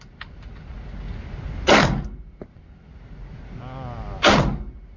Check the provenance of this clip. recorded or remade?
recorded